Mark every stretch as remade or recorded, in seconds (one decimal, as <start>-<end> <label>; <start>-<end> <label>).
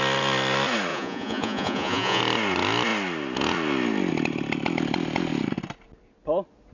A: 0.0-0.9 recorded; 0.9-2.2 remade; 2.2-6.7 recorded